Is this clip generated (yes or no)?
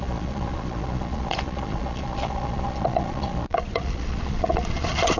yes